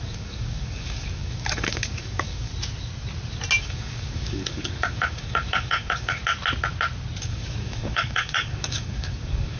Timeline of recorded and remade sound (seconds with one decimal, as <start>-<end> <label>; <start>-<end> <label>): 0.0-2.5 remade; 2.5-3.6 recorded; 3.6-6.2 remade; 6.2-7.2 recorded; 7.2-9.6 remade